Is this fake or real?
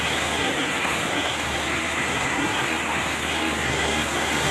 fake